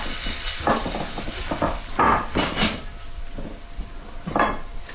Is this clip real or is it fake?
real